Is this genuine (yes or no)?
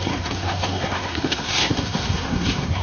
no